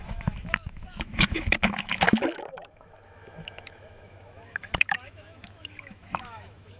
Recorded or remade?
remade